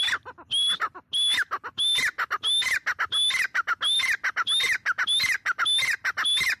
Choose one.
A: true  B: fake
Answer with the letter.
A